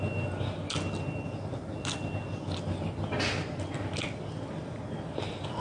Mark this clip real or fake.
real